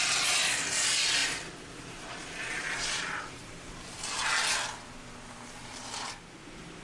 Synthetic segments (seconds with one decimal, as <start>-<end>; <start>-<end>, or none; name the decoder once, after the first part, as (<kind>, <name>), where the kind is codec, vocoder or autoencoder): 1.2-4.5 (vocoder, BigVGAN v2); 5.6-6.1